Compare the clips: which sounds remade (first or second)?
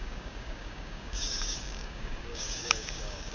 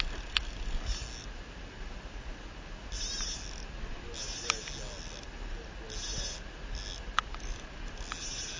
first